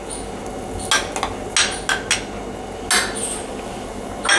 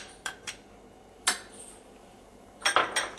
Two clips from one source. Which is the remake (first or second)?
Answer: second